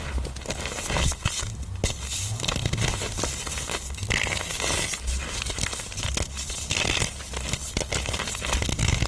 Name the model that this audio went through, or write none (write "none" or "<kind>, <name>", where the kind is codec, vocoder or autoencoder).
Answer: none